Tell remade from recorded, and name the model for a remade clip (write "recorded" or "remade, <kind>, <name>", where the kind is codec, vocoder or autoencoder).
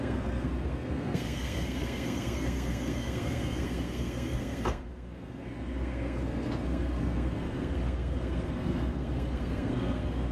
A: remade, codec, SNAC